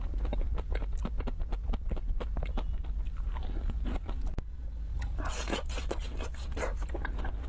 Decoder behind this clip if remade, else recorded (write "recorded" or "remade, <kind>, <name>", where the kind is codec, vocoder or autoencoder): recorded